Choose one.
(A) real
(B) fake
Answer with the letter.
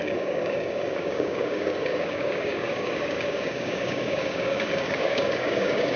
B